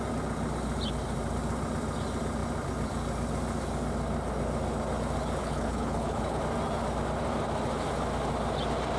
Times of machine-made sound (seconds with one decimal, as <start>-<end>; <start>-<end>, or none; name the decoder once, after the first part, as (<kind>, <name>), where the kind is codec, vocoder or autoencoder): 5.4-6.4 (codec, HILCodec)